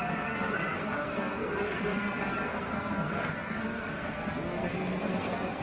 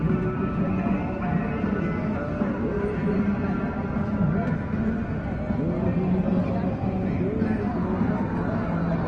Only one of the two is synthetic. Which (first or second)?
first